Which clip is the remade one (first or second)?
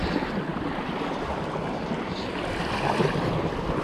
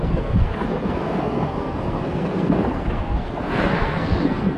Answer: second